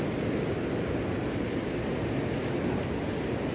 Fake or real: real